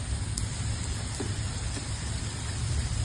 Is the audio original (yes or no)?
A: yes